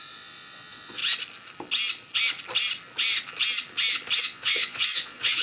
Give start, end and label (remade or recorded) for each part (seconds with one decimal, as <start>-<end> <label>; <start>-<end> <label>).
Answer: 0.0-1.0 remade; 1.0-4.2 recorded; 4.2-5.4 remade